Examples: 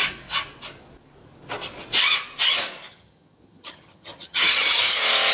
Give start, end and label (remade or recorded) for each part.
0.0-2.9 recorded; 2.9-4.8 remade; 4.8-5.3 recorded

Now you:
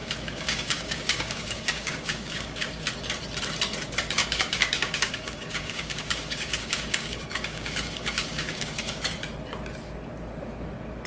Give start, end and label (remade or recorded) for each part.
0.0-2.9 remade; 2.9-4.2 recorded; 4.2-9.0 remade; 9.0-11.1 recorded

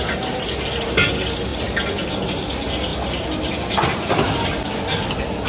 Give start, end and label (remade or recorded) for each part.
0.0-5.5 recorded

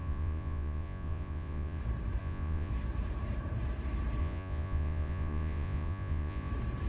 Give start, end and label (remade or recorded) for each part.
0.0-1.8 remade; 1.8-2.2 recorded; 2.2-2.7 remade; 2.7-4.2 recorded; 4.2-6.5 remade; 6.5-6.9 recorded

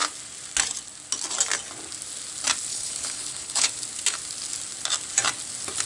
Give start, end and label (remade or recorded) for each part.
0.0-2.7 recorded; 2.7-3.7 remade; 3.7-5.9 recorded

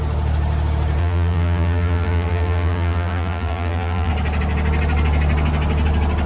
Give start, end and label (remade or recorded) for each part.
0.0-1.0 recorded; 1.0-4.1 remade; 4.1-6.3 recorded

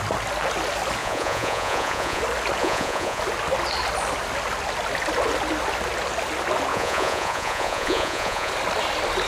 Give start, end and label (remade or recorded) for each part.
0.0-1.0 recorded; 1.0-2.2 remade; 2.2-2.6 recorded; 2.6-3.2 remade; 3.2-6.7 recorded; 6.7-8.5 remade; 8.5-9.3 recorded